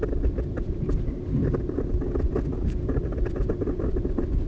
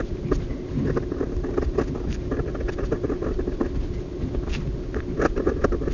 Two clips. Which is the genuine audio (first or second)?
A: second